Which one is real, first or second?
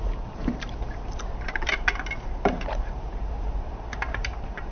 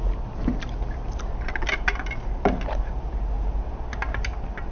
second